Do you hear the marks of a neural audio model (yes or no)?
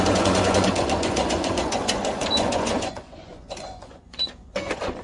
yes